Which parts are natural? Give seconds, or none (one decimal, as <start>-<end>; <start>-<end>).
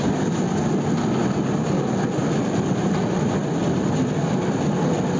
0.0-5.2